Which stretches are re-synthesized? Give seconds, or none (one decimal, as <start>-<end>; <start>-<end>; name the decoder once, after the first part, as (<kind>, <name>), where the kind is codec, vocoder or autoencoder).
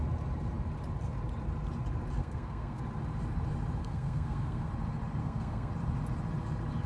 2.2-2.8 (codec, SNAC); 3.8-4.7; 5.2-5.7